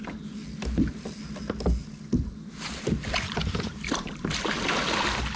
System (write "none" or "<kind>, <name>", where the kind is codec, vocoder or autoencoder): none